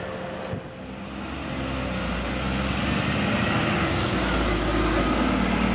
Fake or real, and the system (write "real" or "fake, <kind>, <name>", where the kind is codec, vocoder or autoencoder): real